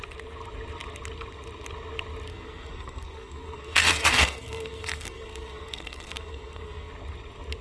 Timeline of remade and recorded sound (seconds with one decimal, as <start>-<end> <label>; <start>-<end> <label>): 0.0-2.3 recorded; 2.3-6.9 remade; 6.9-7.6 recorded